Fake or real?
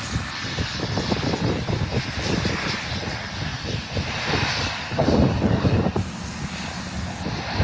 real